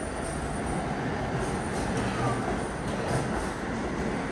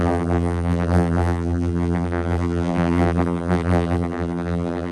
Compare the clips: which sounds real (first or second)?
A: first